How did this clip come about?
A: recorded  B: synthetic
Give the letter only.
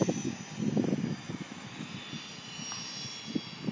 A